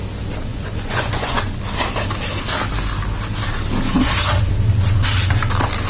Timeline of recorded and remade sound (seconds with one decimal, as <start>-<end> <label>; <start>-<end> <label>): 0.0-0.5 recorded; 0.5-1.6 remade; 1.6-5.9 recorded